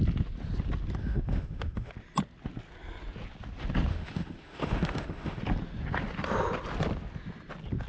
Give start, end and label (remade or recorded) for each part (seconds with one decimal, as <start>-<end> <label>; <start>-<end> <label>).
0.0-1.0 recorded; 1.0-1.9 remade; 1.9-3.9 recorded; 3.9-5.4 remade; 5.4-7.9 recorded